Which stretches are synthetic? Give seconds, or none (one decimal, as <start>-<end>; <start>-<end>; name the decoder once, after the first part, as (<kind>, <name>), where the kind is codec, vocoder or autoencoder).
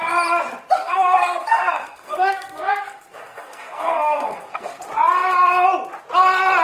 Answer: 0.8-4.8 (codec, SNAC)